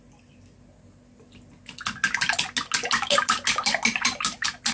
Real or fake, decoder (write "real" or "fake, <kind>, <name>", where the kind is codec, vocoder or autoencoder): real